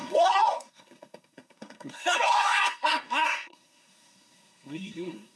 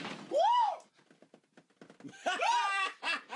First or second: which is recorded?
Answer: second